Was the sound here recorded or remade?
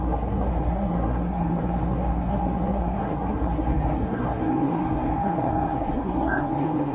remade